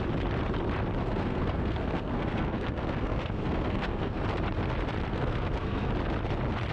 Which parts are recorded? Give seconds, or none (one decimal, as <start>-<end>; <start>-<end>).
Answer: 0.0-1.0; 4.2-5.1; 5.9-6.7